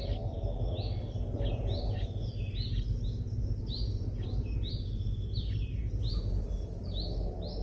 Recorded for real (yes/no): yes